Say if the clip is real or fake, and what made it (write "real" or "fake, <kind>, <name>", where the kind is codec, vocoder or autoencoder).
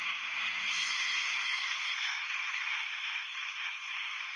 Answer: fake, codec, SNAC